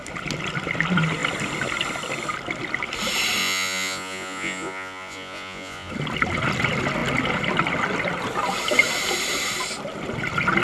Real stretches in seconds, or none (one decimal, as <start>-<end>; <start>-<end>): 0.0-3.4; 5.9-10.6